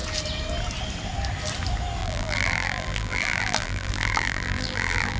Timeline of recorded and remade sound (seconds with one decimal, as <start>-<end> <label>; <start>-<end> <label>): 0.0-2.0 recorded; 2.0-5.2 remade